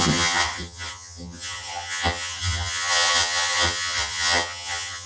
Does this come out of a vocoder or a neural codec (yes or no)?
yes